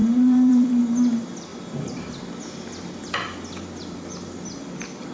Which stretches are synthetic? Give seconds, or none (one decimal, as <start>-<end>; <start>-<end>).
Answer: 0.0-0.8